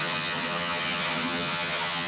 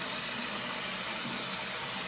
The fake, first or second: first